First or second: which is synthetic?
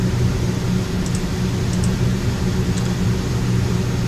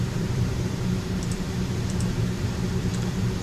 second